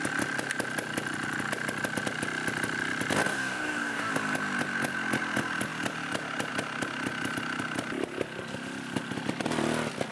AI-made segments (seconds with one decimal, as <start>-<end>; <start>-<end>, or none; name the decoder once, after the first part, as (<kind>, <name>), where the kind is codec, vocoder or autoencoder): 3.3-4.1 (codec, DAC)